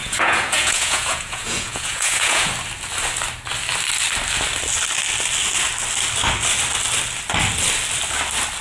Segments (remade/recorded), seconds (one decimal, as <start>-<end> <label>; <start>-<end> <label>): 0.0-2.5 remade; 2.5-8.6 recorded